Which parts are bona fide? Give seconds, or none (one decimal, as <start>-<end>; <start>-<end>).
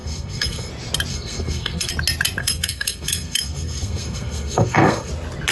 0.7-1.1; 1.9-2.4; 5.1-5.5